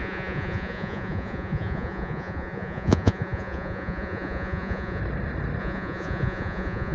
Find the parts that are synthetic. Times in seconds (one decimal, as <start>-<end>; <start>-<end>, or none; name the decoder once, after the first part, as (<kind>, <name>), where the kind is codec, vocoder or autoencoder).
0.0-5.0 (vocoder, Vocos); 5.6-6.9